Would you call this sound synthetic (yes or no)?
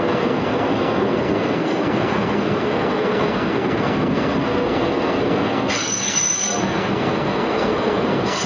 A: yes